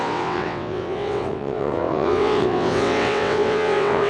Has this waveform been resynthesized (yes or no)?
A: yes